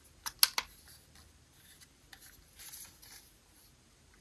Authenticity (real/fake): real